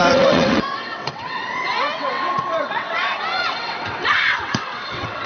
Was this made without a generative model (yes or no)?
no